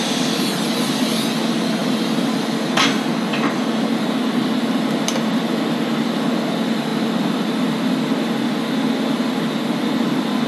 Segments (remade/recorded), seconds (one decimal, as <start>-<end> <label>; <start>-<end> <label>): 0.0-10.5 recorded